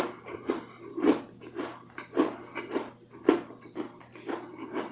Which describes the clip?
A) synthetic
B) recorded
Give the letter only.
B